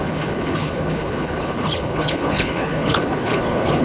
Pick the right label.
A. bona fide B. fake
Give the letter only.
B